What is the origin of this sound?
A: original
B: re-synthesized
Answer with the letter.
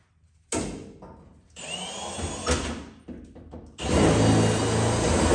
A